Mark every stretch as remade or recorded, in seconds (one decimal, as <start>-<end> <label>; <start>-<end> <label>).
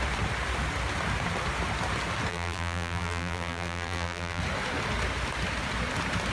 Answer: 0.0-2.3 recorded; 2.3-4.4 remade; 4.4-6.3 recorded